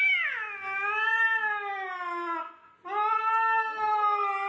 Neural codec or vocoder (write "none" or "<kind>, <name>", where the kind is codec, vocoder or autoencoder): none